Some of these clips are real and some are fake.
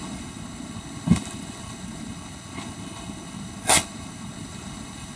fake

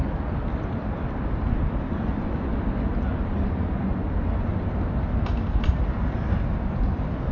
real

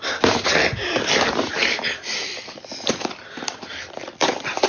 fake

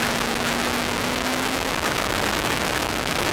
fake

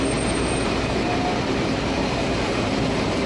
fake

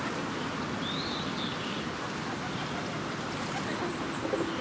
real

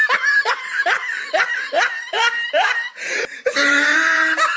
fake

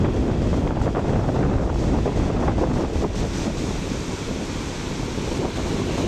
real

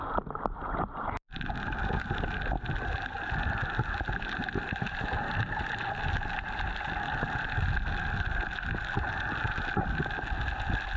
real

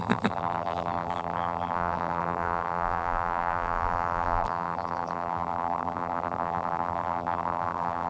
fake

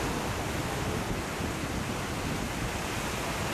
real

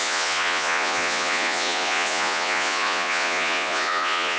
fake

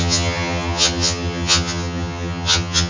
fake